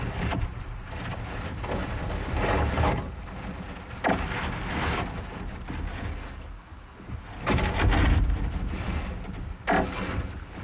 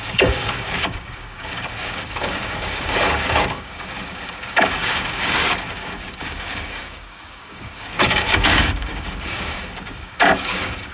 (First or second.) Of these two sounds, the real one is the first